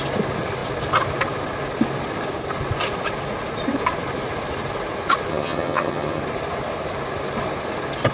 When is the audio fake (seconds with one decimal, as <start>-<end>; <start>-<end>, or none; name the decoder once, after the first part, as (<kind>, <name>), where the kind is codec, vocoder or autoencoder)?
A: 5.3-6.2 (vocoder, HiFi-GAN)